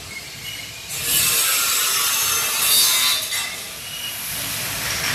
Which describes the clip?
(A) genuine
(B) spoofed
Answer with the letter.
B